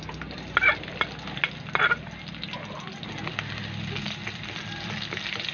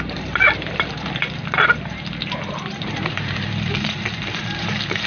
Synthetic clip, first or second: second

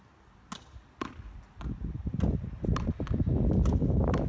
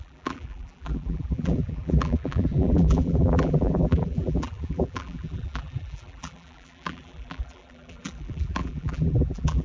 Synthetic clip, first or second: second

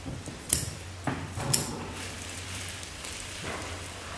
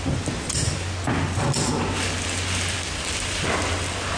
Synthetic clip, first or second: first